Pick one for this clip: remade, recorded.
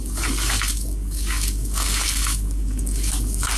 remade